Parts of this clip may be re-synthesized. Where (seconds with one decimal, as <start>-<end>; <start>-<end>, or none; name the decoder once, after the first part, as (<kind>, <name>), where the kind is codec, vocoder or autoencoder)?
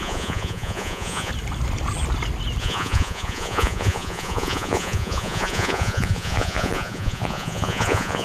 0.0-1.3 (vocoder, Vocos); 2.6-8.2